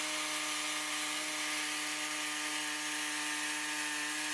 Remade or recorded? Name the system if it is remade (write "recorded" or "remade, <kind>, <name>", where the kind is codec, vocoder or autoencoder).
recorded